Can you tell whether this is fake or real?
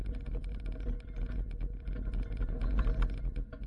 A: real